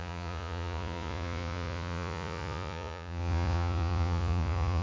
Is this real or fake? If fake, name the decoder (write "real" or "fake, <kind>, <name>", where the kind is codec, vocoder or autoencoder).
fake, vocoder, Vocos